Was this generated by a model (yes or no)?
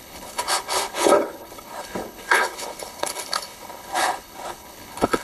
yes